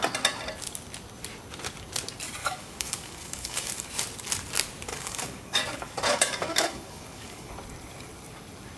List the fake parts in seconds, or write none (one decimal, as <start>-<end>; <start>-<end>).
2.4-3.9; 4.9-7.5